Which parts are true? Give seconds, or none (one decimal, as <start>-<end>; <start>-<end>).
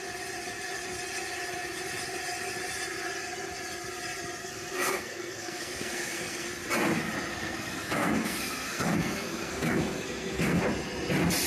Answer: 0.0-4.4; 6.5-7.3; 10.6-11.5